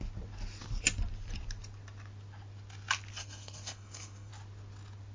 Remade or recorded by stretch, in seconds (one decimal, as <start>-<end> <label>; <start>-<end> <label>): 0.0-3.2 recorded; 3.2-4.3 remade; 4.3-5.1 recorded